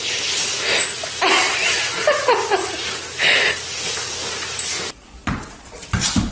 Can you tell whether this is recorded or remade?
recorded